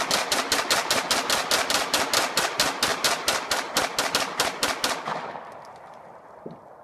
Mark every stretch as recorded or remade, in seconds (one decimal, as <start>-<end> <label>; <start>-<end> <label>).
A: 0.0-6.8 recorded